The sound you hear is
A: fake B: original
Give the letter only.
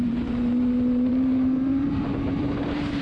A